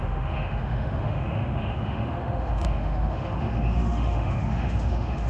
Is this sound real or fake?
fake